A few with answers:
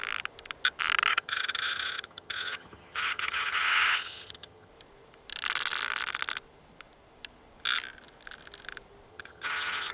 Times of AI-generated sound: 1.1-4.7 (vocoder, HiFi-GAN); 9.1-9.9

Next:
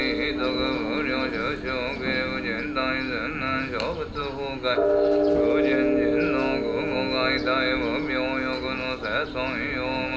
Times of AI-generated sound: none

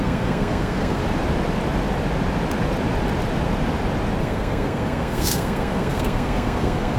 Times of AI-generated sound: 0.0-1.0 (codec, SNAC); 4.2-7.0

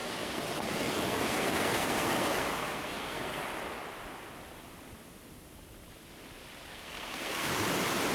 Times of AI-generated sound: 0.0-3.4 (codec, SNAC); 6.7-7.5